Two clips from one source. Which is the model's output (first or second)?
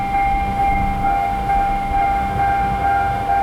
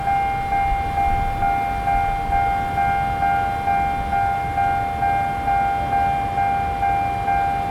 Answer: first